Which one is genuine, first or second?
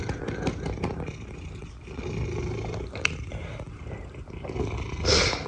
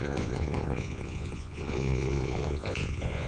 first